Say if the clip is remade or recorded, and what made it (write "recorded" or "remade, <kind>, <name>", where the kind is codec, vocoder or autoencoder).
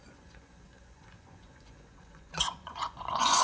remade, vocoder, Vocos